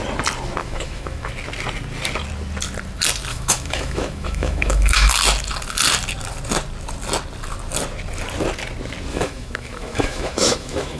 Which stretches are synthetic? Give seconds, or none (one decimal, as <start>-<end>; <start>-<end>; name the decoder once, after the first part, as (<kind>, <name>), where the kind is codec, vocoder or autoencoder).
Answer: 0.6-1.3 (autoencoder, DAC-VAE); 3.3-5.1; 9.1-11.0